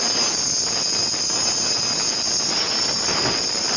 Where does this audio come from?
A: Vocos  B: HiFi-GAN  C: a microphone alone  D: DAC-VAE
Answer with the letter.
C